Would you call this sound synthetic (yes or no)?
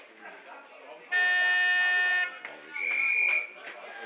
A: no